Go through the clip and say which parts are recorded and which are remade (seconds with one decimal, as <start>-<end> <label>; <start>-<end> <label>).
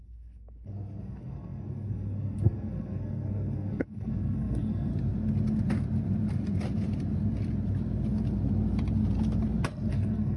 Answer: 0.0-4.9 remade; 4.9-9.9 recorded; 9.9-10.4 remade